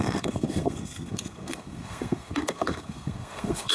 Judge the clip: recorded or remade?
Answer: remade